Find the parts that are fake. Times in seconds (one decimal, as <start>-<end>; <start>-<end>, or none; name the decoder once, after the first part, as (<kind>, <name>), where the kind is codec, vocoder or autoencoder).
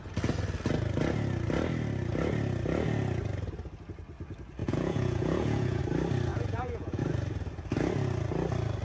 4.6-5.8 (vocoder, Vocos); 6.3-7.0